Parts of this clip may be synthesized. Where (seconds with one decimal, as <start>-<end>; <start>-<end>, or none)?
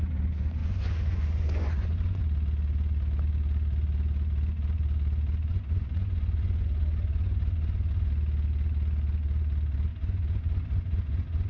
0.6-2.2; 5.5-8.1; 9.9-11.5